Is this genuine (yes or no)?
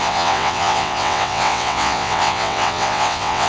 no